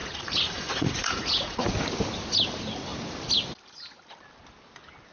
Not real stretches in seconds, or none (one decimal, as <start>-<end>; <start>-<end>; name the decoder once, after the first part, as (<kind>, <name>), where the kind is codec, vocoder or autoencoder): 0.0-1.7 (vocoder, Vocos)